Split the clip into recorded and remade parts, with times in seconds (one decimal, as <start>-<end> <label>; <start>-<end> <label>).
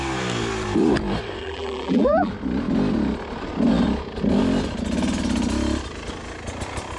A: 0.0-1.4 recorded; 1.4-2.3 remade; 2.3-7.0 recorded